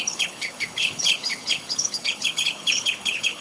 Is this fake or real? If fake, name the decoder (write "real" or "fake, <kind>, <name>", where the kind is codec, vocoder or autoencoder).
fake, codec, HILCodec